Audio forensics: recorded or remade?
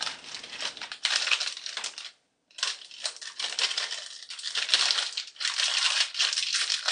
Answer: remade